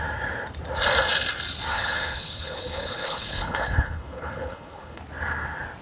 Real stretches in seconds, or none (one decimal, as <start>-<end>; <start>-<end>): 0.0-1.7; 5.0-5.8